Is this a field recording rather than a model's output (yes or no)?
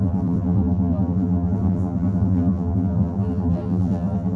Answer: no